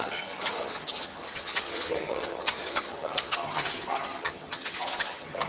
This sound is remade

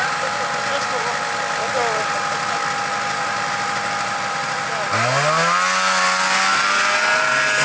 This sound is recorded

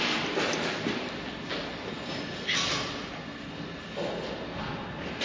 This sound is recorded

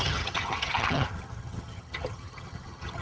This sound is remade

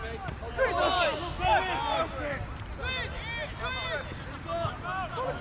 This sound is recorded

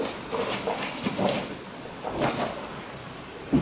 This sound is recorded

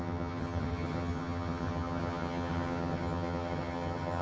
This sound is remade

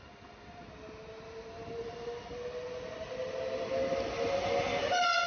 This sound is recorded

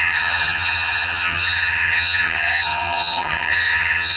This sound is remade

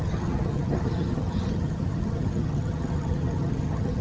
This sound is remade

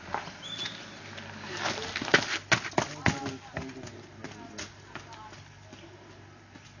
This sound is recorded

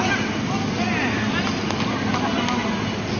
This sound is recorded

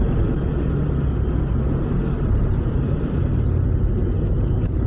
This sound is recorded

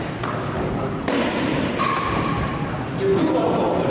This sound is recorded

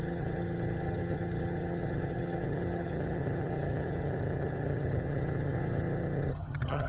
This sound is remade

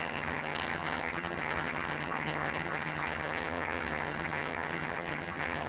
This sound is remade